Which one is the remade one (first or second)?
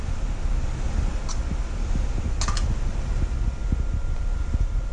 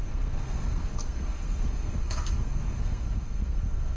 second